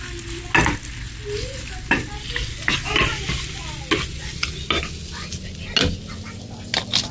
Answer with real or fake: real